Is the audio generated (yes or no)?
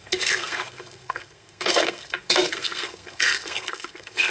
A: yes